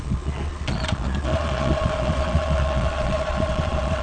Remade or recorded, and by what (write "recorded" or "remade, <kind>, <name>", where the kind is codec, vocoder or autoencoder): remade, vocoder, Vocos